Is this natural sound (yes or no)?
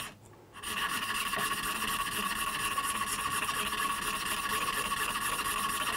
yes